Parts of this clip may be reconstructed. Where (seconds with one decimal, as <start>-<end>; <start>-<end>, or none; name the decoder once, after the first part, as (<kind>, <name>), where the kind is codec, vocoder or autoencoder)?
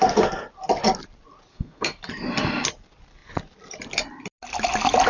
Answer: 1.5-2.0 (codec, SNAC)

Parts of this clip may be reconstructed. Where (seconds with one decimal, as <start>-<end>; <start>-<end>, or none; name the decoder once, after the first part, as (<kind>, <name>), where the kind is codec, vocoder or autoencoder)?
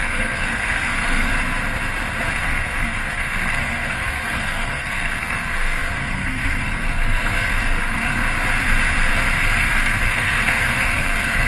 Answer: 0.0-1.3 (codec, SNAC); 2.4-8.2; 9.1-11.5